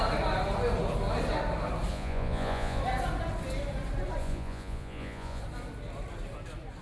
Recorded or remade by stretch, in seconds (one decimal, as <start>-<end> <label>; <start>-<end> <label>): 0.0-1.9 recorded; 1.9-2.8 remade; 2.8-4.2 recorded; 4.2-5.4 remade; 5.4-6.8 recorded